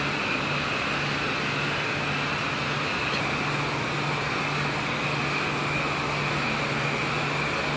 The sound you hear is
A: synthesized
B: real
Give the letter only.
B